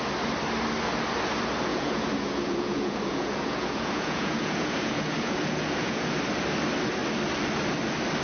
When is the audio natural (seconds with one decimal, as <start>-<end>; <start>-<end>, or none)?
0.0-1.7; 6.1-8.2